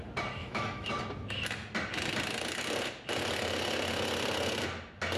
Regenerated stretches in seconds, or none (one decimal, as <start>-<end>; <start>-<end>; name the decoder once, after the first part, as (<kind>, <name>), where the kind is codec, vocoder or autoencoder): 0.4-0.9 (autoencoder, DAC-VAE)